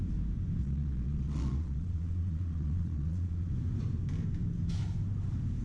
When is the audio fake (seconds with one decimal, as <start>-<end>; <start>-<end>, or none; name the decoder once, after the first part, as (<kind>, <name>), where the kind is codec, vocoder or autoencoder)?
0.6-3.5 (vocoder, Vocos)